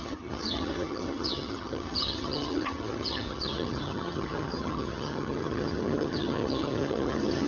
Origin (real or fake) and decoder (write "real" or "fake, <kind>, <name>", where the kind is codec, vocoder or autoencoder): fake, vocoder, HiFi-GAN